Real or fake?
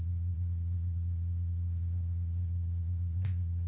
fake